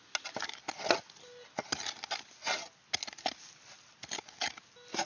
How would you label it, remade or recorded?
recorded